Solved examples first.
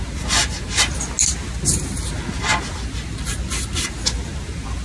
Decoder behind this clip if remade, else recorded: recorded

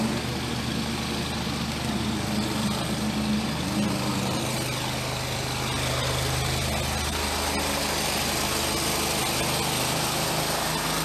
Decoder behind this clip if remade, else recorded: recorded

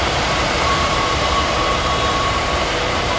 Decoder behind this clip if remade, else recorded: remade, vocoder, BigVGAN v2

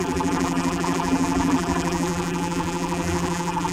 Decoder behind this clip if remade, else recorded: remade, vocoder, BigVGAN v2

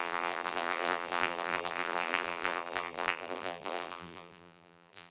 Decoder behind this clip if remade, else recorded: remade, vocoder, BigVGAN v2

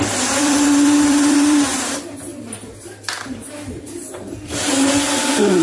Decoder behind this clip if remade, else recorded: remade, vocoder, BigVGAN v2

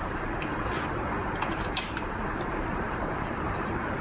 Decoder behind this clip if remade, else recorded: remade, vocoder, BigVGAN v2